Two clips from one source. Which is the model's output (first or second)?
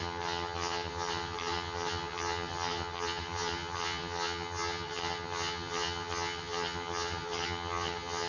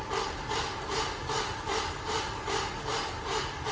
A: first